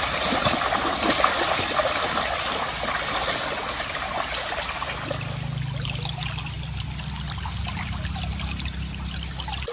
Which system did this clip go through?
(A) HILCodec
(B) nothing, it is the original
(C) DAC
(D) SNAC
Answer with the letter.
B